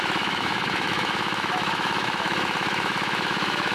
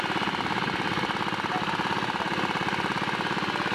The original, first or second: second